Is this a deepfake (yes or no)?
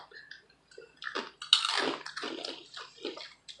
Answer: no